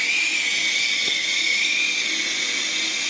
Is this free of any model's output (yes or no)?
yes